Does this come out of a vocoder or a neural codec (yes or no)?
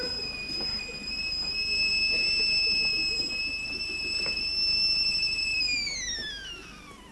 no